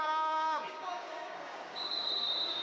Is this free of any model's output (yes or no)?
no